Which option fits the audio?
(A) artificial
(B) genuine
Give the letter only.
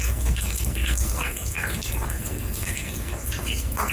A